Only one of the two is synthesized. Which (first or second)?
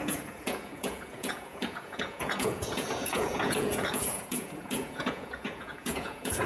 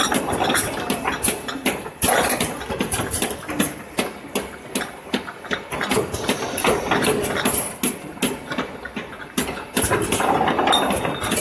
first